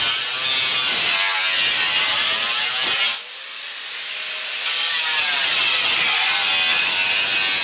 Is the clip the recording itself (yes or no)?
yes